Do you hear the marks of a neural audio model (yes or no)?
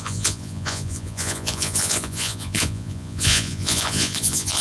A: yes